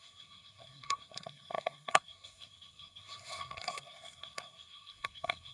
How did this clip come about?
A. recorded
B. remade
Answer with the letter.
B